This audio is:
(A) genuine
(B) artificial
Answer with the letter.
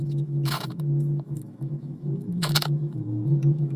B